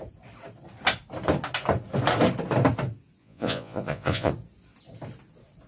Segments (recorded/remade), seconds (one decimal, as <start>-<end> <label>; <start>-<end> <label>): 0.0-3.2 recorded; 3.2-4.3 remade; 4.3-5.7 recorded